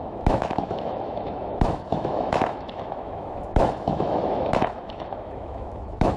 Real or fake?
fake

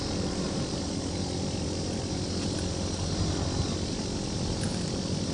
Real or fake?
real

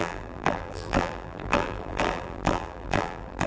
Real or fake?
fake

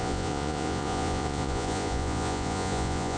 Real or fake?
fake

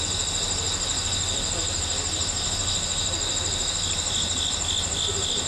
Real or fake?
real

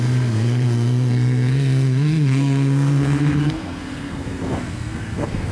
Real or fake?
fake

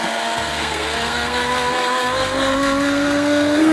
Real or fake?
fake